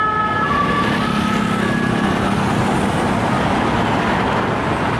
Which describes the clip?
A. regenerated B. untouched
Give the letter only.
B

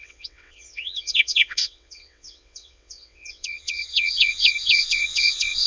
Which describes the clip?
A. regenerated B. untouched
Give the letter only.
A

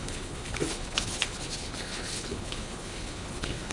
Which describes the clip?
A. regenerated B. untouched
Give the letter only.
A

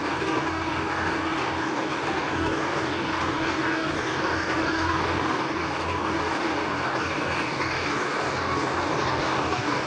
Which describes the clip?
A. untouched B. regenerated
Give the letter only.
B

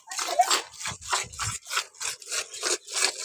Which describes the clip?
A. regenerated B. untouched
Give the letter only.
B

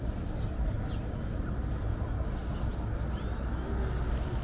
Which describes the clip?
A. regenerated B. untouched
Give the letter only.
B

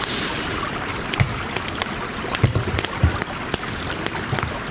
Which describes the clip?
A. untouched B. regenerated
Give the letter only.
A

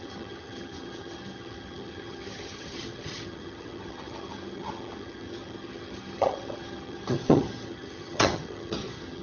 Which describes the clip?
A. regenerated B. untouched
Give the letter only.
A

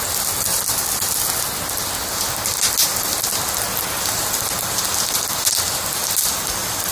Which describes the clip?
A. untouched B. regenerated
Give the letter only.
A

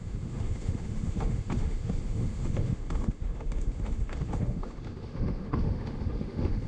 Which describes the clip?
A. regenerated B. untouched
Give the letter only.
A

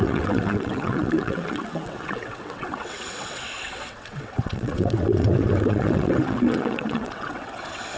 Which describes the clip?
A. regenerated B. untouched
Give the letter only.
A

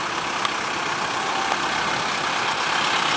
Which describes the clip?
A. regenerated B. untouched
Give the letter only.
B